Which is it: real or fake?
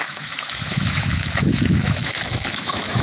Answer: fake